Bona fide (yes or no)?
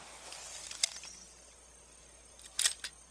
yes